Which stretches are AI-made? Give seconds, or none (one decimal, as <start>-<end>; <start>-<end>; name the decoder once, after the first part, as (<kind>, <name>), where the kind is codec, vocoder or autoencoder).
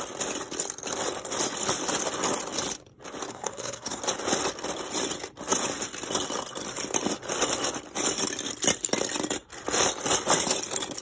3.3-4.0 (codec, SNAC)